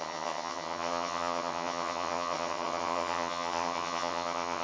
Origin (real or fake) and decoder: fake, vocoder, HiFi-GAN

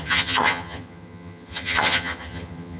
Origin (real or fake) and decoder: fake, vocoder, HiFi-GAN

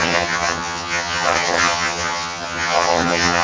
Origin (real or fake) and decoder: fake, vocoder, HiFi-GAN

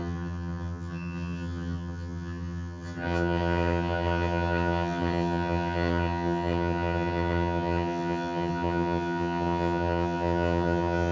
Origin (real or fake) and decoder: fake, vocoder, HiFi-GAN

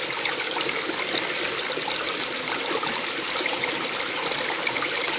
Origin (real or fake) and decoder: real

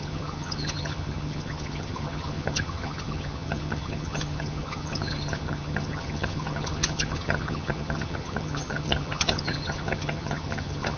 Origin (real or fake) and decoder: fake, vocoder, HiFi-GAN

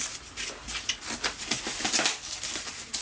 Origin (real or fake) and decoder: real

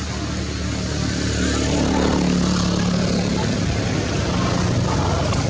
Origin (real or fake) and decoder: real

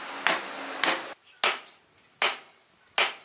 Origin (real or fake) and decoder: real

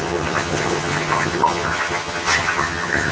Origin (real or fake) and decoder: fake, vocoder, HiFi-GAN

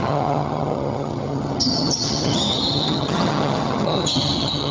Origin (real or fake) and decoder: fake, vocoder, HiFi-GAN